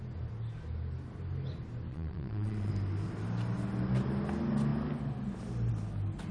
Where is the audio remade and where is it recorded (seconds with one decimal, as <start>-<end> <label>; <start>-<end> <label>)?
0.0-1.9 recorded; 1.9-2.7 remade; 2.7-6.3 recorded